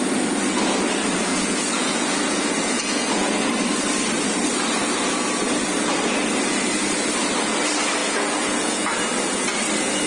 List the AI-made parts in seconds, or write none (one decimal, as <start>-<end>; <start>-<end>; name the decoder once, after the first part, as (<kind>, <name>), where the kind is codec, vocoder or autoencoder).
1.3-3.5 (vocoder, Vocos); 8.0-8.9